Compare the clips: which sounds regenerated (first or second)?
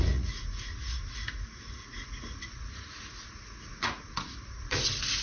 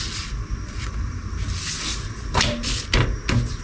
first